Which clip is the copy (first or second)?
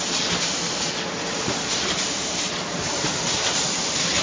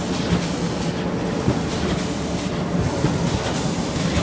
first